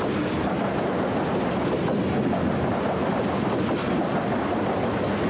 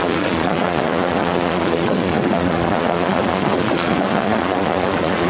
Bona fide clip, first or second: first